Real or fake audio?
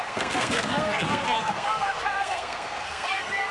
fake